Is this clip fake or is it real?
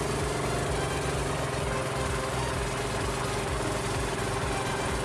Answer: real